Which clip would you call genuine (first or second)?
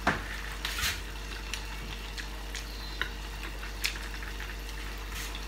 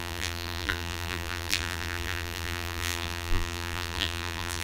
first